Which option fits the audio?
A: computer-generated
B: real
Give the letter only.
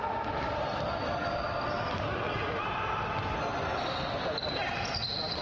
B